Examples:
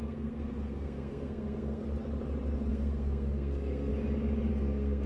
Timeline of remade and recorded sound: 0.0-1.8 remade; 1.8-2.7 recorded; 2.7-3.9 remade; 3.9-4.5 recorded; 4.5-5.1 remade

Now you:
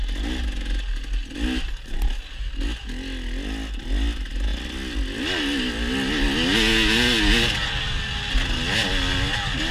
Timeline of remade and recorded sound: 0.0-9.7 recorded

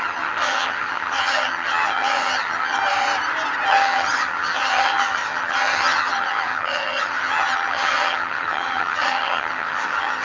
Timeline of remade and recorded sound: 0.0-2.8 remade; 2.8-3.7 recorded; 3.7-10.2 remade

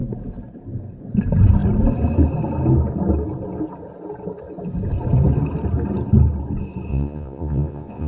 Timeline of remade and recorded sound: 0.0-6.9 recorded; 6.9-8.1 remade

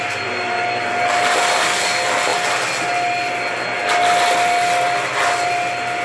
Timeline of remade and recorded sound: 0.0-6.0 recorded